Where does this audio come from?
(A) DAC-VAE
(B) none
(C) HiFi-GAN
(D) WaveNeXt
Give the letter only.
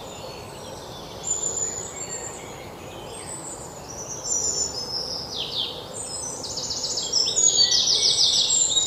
B